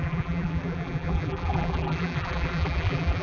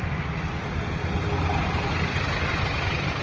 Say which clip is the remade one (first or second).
first